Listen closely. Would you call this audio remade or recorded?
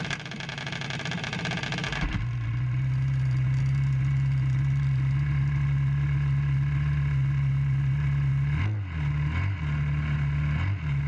recorded